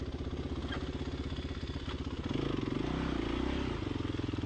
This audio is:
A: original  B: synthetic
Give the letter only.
A